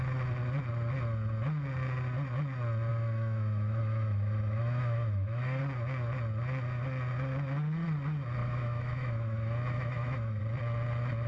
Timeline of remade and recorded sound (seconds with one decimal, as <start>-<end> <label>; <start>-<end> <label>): 0.0-2.9 recorded; 2.9-5.6 remade; 5.6-8.4 recorded; 8.4-10.4 remade; 10.4-11.3 recorded